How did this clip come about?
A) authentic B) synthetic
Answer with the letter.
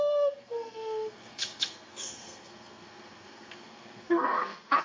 B